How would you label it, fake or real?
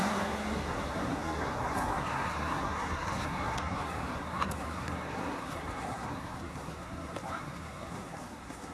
fake